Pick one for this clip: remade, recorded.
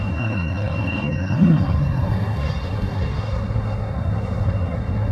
remade